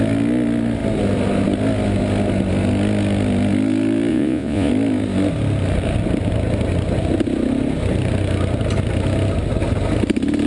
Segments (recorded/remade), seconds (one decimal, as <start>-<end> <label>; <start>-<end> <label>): 0.0-4.1 recorded; 4.1-4.7 remade; 4.7-10.5 recorded